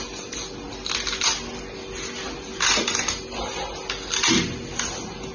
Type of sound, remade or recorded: recorded